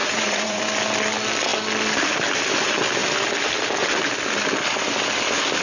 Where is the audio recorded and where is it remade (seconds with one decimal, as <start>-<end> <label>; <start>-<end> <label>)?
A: 0.0-0.6 remade; 0.6-5.6 recorded